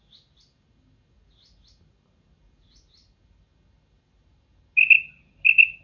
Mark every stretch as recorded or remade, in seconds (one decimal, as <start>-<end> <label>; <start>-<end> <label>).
0.0-5.8 recorded